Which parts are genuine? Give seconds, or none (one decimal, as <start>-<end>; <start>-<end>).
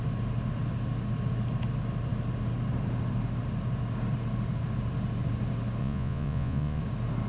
0.0-5.8; 6.8-7.3